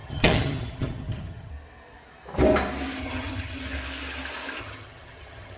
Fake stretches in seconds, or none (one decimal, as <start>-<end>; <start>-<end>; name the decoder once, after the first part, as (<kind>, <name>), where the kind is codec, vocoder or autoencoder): 0.0-1.5 (vocoder, HiFi-GAN); 3.0-3.6; 4.6-5.6